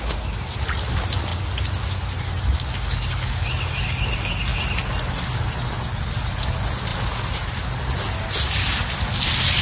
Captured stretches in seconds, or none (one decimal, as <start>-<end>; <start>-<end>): 0.0-9.6